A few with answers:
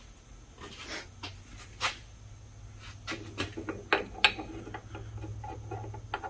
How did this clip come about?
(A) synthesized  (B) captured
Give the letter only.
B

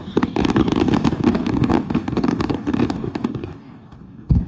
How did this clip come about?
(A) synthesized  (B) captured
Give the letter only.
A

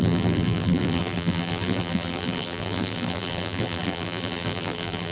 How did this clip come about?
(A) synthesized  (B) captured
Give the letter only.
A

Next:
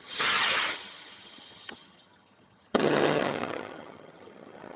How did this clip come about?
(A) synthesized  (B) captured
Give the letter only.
A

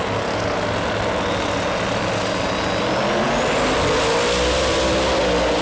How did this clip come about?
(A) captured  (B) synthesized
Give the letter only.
A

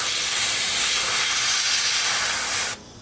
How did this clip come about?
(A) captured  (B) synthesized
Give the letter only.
A